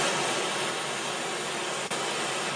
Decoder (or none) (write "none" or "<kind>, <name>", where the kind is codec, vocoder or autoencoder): none